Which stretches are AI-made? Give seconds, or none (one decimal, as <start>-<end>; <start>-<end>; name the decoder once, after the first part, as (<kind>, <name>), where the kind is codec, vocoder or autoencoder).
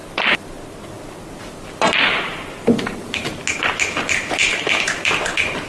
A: none